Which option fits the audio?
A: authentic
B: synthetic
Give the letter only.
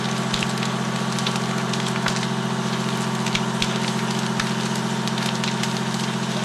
A